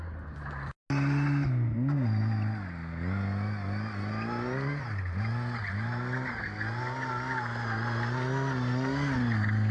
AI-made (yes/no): no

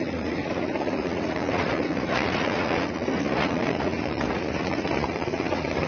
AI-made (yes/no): yes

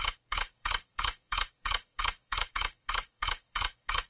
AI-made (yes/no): yes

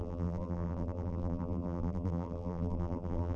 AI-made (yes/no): yes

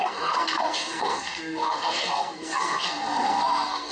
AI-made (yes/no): yes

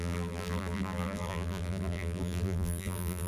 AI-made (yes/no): yes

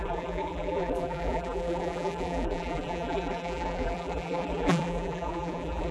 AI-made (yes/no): yes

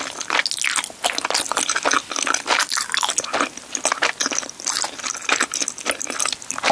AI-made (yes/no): no